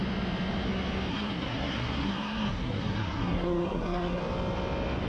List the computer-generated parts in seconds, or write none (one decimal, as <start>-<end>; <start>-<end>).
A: 1.1-4.2